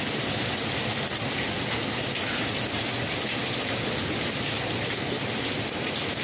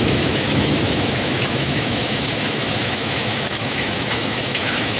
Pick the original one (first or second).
first